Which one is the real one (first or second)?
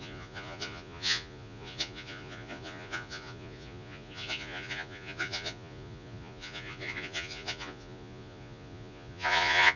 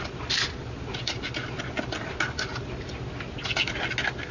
second